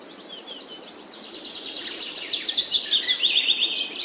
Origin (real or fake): real